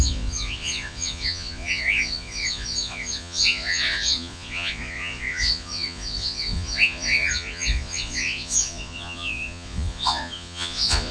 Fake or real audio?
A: fake